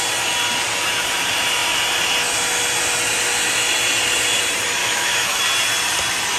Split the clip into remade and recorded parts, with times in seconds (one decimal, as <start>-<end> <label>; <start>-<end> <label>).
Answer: 0.0-4.8 recorded; 4.8-5.4 remade; 5.4-6.4 recorded